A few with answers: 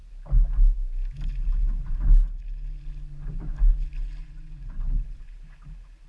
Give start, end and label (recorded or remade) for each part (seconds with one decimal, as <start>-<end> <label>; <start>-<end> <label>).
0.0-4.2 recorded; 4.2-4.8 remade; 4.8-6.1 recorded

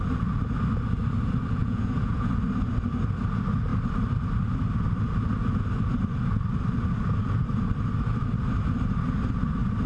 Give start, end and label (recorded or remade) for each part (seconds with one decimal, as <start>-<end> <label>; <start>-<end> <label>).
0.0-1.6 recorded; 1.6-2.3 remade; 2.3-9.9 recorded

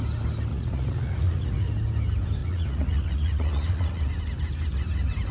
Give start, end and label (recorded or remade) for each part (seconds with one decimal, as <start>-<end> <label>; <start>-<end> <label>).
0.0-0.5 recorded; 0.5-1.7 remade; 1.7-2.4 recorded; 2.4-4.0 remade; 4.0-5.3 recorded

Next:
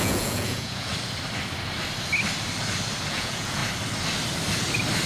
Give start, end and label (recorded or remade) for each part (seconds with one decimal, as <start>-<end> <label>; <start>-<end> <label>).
0.0-0.9 remade; 0.9-3.1 recorded; 3.1-3.6 remade; 3.6-5.1 recorded

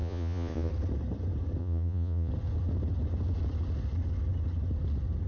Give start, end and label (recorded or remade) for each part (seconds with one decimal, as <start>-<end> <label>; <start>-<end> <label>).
0.0-0.7 remade; 0.7-1.6 recorded; 1.6-2.3 remade; 2.3-5.3 recorded

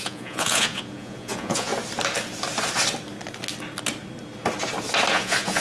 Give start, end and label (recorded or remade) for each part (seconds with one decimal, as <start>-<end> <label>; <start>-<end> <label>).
0.0-1.7 remade; 1.7-5.1 recorded; 5.1-5.6 remade